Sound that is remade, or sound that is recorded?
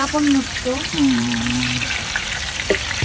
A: remade